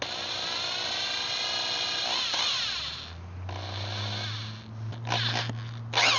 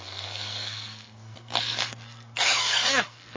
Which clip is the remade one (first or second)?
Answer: second